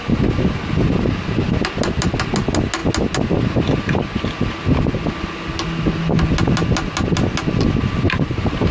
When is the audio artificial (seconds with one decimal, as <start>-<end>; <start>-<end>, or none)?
none